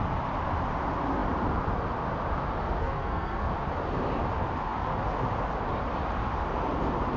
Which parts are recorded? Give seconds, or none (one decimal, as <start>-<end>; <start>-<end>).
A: 0.0-2.8; 3.5-7.2